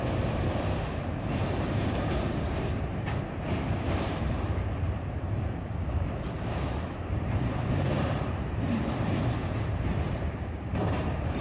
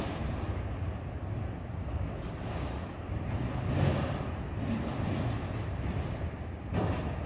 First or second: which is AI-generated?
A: first